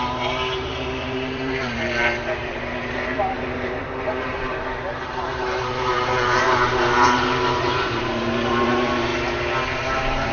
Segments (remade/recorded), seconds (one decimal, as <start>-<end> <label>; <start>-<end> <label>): 0.0-9.1 remade; 9.1-9.7 recorded; 9.7-10.3 remade

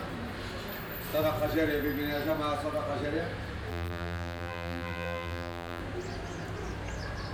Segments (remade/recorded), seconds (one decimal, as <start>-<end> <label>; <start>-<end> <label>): 0.0-3.7 recorded; 3.7-5.8 remade; 5.8-7.3 recorded

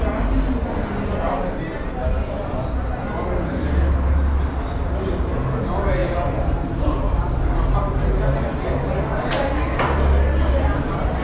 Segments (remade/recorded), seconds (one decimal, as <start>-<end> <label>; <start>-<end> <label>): 0.0-6.0 recorded; 6.0-8.2 remade; 8.2-11.2 recorded